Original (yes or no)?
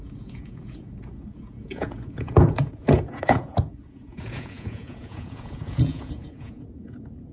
no